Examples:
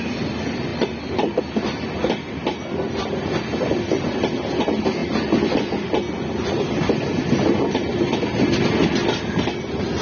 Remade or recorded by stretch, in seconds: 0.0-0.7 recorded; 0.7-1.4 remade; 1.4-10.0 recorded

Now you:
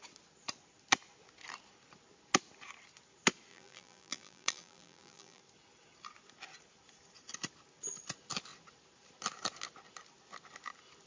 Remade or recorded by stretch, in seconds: 0.0-3.5 recorded; 3.5-5.4 remade; 5.4-11.1 recorded

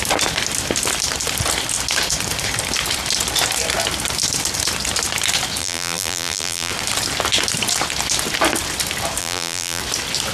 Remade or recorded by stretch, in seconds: 0.0-5.6 recorded; 5.6-6.7 remade; 6.7-9.2 recorded; 9.2-9.8 remade; 9.8-10.3 recorded

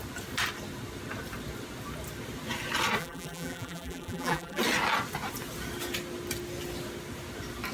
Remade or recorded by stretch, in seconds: 0.0-3.0 recorded; 3.0-4.6 remade; 4.6-7.7 recorded

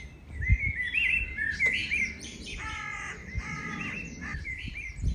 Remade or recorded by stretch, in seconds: 0.0-1.8 recorded; 1.8-2.6 remade; 2.6-3.2 recorded; 3.2-3.8 remade; 3.8-4.3 recorded; 4.3-5.1 remade

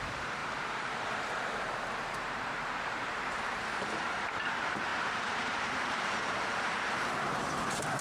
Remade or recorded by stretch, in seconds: 0.0-8.0 remade

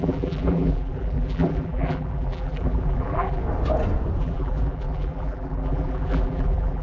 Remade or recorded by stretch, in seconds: 0.0-3.4 remade; 3.4-4.2 recorded; 4.2-6.8 remade

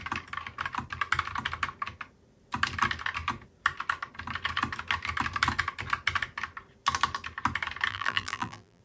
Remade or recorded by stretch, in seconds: 0.0-7.9 recorded; 7.9-8.8 remade